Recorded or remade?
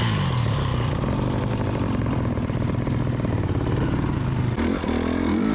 recorded